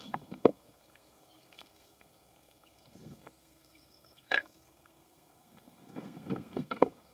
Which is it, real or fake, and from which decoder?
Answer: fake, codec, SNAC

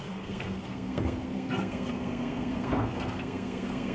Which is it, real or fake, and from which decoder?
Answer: fake, codec, SNAC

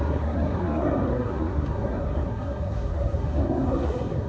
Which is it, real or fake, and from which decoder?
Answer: fake, codec, SNAC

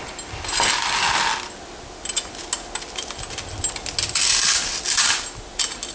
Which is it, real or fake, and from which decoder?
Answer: real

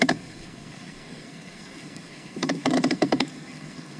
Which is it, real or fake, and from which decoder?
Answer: fake, codec, SNAC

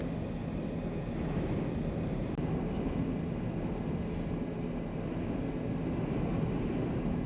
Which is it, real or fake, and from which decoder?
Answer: real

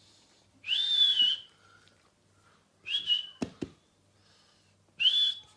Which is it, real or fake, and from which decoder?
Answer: real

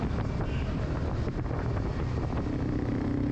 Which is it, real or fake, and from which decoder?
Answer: real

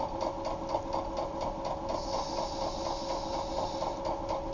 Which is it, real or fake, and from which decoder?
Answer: real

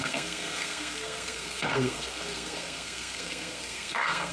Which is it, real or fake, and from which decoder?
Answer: fake, codec, SNAC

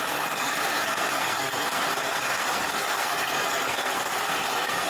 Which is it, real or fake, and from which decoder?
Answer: fake, codec, SNAC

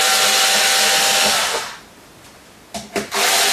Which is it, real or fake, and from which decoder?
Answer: real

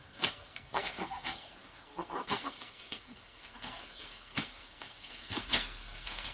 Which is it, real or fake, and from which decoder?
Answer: fake, codec, SNAC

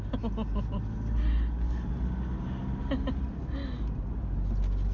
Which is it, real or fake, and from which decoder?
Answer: real